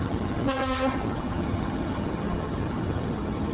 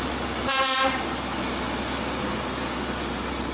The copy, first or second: first